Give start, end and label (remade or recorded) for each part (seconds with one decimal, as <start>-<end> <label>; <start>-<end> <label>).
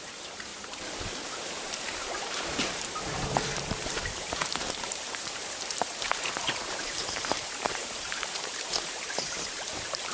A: 0.0-10.1 remade